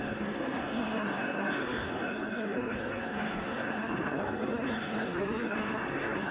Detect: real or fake fake